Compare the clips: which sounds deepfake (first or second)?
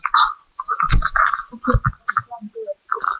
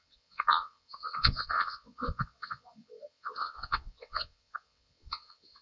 second